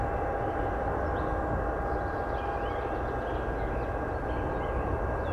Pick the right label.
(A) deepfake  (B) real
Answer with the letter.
B